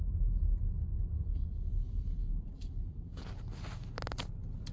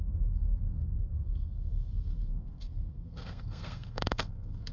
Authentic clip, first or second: first